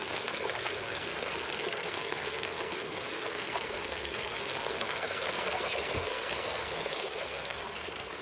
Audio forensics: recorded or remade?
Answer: remade